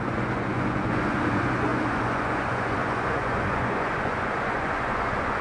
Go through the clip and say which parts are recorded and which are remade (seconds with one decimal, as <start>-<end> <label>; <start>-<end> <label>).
0.0-5.4 remade